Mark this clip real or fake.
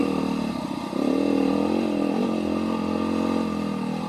real